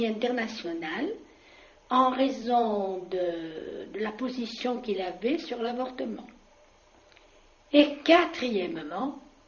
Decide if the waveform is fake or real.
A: fake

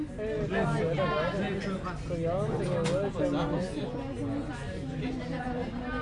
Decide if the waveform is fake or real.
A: real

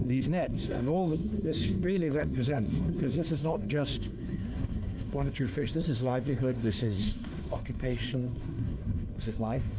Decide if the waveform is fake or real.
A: fake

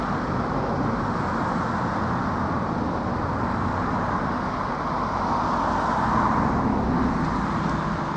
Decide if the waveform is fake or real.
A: real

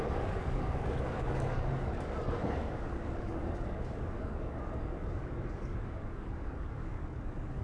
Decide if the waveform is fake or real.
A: fake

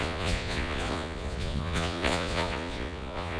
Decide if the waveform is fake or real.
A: fake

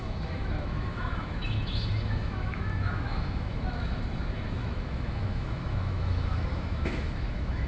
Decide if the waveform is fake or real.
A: fake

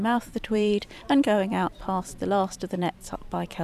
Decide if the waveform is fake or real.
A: fake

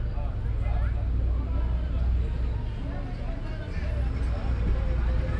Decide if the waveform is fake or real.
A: real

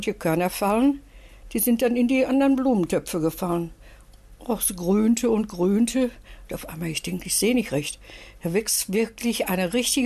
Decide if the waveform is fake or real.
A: real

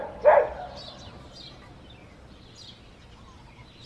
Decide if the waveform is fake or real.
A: real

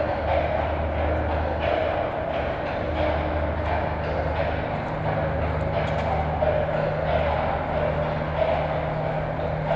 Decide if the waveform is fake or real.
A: real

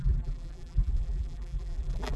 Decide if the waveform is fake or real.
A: fake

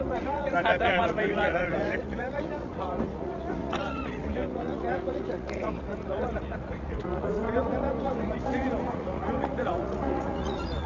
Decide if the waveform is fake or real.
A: fake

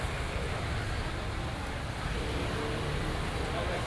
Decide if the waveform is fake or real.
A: real